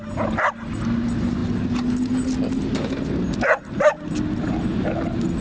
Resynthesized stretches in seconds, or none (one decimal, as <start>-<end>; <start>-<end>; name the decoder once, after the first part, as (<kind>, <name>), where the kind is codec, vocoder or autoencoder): none